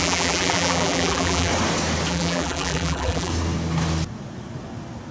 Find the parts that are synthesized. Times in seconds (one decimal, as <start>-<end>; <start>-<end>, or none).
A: 0.0-1.5; 2.1-3.3